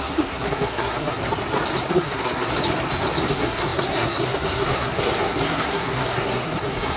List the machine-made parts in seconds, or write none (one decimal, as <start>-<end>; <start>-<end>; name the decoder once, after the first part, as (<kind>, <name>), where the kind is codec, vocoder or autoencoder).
0.0-1.2 (codec, SNAC); 1.9-2.5; 3.3-7.0